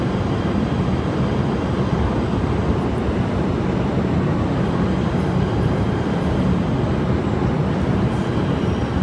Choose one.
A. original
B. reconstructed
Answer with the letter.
A